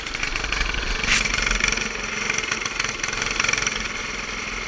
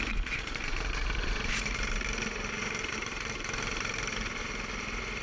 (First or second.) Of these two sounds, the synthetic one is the second